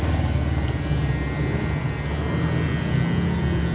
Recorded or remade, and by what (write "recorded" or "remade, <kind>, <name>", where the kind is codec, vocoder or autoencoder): recorded